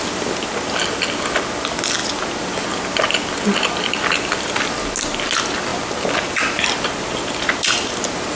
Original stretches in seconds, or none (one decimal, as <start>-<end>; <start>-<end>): 0.0-8.4

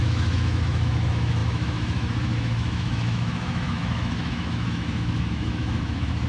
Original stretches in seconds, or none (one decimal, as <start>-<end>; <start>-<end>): none

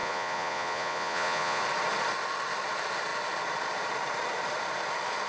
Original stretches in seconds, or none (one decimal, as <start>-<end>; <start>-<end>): 1.6-5.3

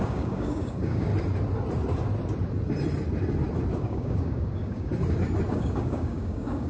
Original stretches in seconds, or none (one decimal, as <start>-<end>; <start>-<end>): 1.1-3.8; 4.9-5.5

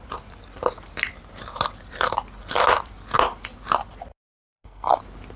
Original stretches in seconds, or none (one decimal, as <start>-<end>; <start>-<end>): 0.0-4.1; 5.0-5.4